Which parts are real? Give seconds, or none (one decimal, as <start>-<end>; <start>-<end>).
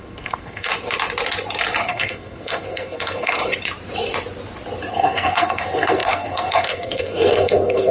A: 0.7-1.9; 3.4-4.9